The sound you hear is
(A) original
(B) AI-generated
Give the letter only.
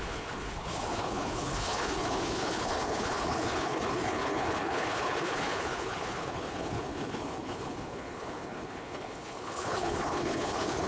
B